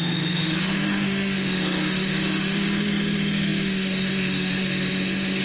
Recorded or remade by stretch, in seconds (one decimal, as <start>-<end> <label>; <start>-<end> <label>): 0.0-5.4 remade